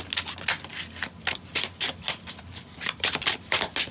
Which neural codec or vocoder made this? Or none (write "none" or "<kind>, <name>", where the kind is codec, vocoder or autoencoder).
none